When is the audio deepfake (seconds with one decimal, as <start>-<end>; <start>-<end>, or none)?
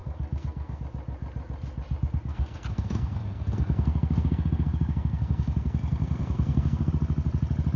0.0-0.8; 2.3-6.9